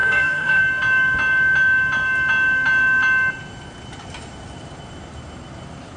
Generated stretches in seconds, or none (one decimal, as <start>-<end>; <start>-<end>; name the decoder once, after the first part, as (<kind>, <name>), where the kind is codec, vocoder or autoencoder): 0.0-0.6 (codec, SNAC)